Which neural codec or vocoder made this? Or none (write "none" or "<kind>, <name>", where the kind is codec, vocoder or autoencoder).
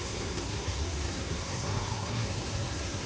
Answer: codec, SNAC